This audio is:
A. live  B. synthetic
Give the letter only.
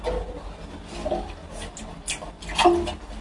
A